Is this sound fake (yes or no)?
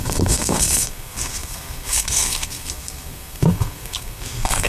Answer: yes